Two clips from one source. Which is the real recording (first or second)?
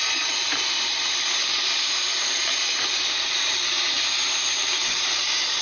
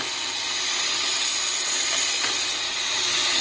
second